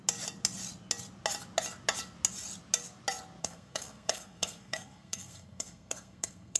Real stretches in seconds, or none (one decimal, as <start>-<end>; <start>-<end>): 0.0-3.4